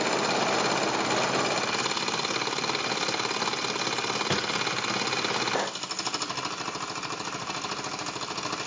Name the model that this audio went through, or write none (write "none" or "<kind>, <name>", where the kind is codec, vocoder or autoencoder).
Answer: none